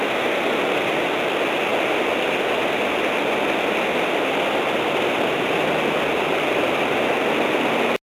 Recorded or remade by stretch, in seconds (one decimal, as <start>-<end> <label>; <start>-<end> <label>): 0.0-8.1 recorded